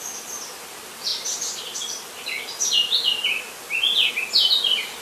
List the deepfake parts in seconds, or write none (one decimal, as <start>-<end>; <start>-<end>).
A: none